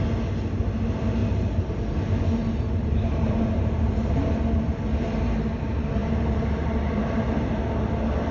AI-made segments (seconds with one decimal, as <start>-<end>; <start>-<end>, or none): 1.2-1.7; 2.4-4.4; 6.0-7.0